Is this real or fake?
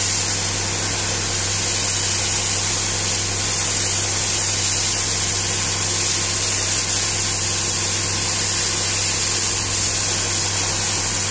real